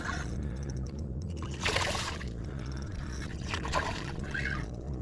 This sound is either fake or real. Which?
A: fake